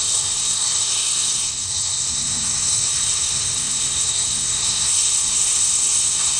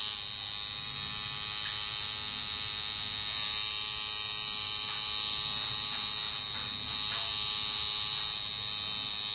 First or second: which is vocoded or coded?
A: first